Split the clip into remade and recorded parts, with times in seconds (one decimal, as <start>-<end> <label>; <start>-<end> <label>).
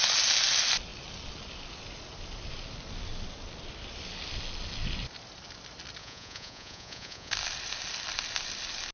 0.0-6.0 recorded; 6.0-7.3 remade; 7.3-8.9 recorded